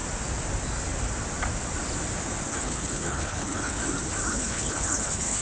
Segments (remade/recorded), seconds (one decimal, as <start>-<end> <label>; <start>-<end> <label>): 0.0-2.5 recorded; 2.5-3.8 remade; 3.8-4.3 recorded; 4.3-5.4 remade